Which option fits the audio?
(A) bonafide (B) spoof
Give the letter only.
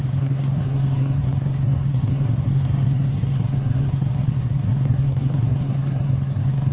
B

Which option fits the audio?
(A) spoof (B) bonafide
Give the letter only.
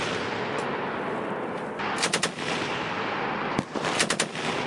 B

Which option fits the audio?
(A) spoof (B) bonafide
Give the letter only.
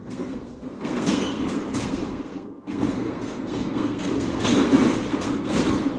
A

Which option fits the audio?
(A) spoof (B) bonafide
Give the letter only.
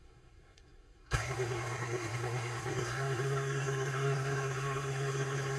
A